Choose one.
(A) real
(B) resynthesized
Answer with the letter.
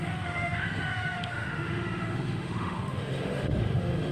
B